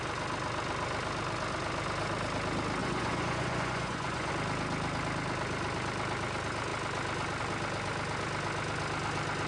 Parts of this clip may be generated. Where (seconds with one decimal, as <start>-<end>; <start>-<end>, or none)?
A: 2.8-4.3